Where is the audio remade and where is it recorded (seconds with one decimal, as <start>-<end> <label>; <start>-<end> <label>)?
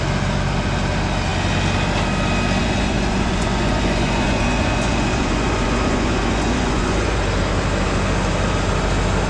0.0-2.6 recorded; 2.6-7.2 remade; 7.2-9.3 recorded